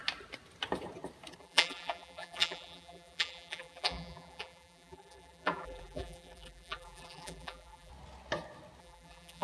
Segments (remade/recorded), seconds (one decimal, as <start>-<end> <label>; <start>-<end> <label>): 0.0-1.4 recorded; 1.4-7.9 remade; 7.9-8.8 recorded; 8.8-9.4 remade